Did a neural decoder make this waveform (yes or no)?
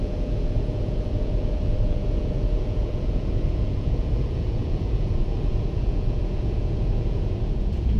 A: yes